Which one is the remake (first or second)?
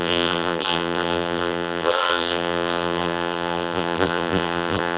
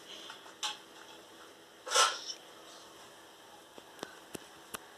first